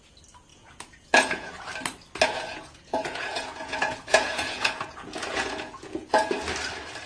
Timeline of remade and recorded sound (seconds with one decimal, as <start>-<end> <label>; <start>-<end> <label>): 0.0-0.5 recorded; 0.5-1.5 remade; 1.5-2.5 recorded; 2.5-6.3 remade; 6.3-7.1 recorded